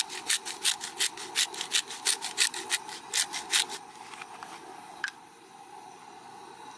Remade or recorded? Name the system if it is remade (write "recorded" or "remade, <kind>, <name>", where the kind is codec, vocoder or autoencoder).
recorded